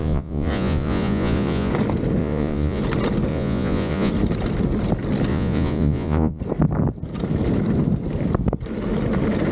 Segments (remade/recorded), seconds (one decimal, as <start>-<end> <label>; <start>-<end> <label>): 0.0-1.7 remade; 1.7-2.2 recorded; 2.2-2.8 remade; 2.8-3.3 recorded; 3.3-4.1 remade; 4.1-5.3 recorded; 5.3-6.4 remade; 6.4-9.5 recorded